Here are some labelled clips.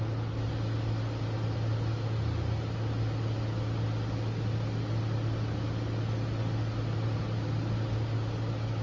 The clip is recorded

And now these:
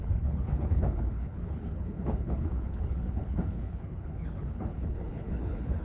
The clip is remade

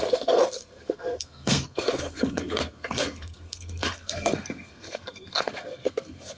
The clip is remade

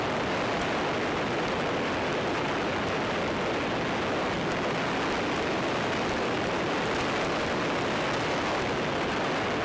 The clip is recorded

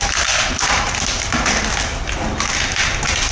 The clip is recorded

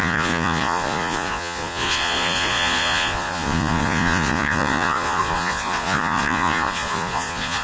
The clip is remade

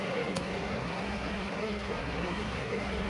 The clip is remade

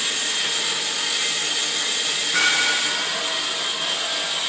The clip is recorded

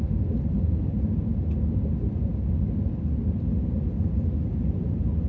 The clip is recorded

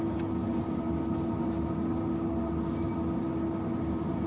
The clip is recorded